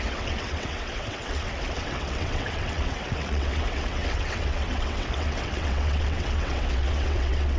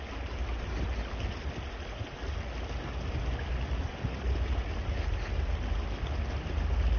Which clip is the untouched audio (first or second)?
second